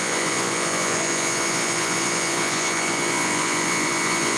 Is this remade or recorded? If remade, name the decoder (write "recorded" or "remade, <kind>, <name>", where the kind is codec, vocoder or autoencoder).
remade, vocoder, Vocos